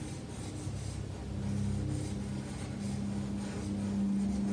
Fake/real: real